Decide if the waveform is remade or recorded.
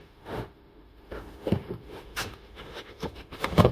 remade